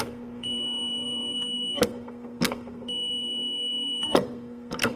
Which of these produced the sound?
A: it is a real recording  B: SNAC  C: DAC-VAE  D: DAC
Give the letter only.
B